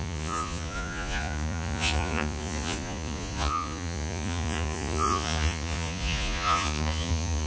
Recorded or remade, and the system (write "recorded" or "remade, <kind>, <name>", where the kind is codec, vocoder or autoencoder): remade, vocoder, Vocos